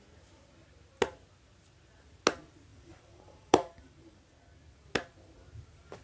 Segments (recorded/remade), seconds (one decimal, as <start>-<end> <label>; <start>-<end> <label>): 0.0-2.7 recorded; 2.7-4.2 remade; 4.2-6.0 recorded